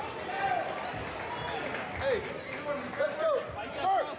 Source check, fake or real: real